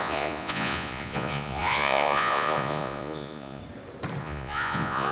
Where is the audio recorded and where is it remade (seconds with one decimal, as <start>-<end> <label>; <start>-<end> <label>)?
0.0-3.6 remade; 3.6-4.2 recorded; 4.2-5.1 remade